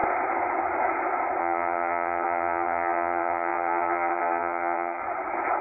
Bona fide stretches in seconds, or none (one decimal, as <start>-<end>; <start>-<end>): 0.0-1.4; 5.0-5.6